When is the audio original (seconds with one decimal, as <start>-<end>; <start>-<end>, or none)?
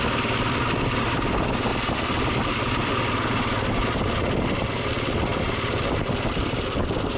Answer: 0.0-1.7; 4.0-5.3; 6.6-7.2